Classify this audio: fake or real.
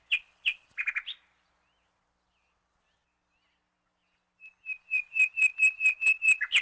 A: real